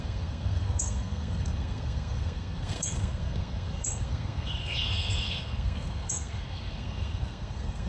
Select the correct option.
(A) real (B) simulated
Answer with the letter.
B